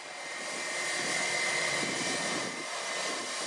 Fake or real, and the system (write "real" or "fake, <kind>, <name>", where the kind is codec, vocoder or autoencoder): real